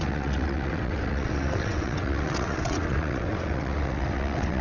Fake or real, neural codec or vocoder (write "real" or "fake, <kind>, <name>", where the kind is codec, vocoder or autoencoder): fake, vocoder, WaveNeXt